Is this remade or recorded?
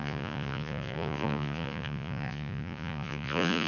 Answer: remade